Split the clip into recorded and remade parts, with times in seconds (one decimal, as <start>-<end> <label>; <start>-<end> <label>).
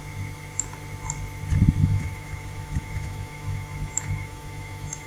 0.0-1.8 recorded; 1.8-5.1 remade